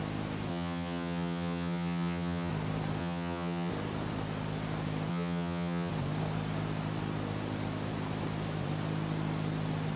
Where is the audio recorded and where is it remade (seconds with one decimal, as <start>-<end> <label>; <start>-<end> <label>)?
0.0-0.5 recorded; 0.5-2.5 remade; 2.5-3.0 recorded; 3.0-3.7 remade; 3.7-5.1 recorded; 5.1-5.9 remade; 5.9-10.0 recorded